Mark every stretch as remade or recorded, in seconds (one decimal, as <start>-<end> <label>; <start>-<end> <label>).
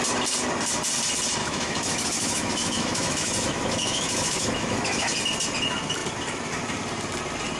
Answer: 0.0-1.4 recorded; 1.4-5.2 remade; 5.2-7.6 recorded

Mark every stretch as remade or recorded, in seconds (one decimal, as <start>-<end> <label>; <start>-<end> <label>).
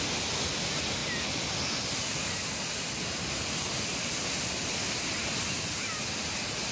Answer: 0.0-6.7 recorded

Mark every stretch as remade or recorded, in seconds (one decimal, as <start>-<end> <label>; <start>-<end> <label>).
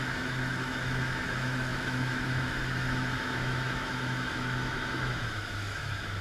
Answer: 0.0-6.2 remade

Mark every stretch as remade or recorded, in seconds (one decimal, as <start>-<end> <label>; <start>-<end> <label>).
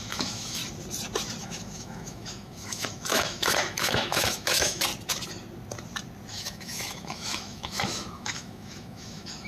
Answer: 0.0-0.6 remade; 0.6-1.4 recorded; 1.4-4.9 remade; 4.9-6.3 recorded; 6.3-9.5 remade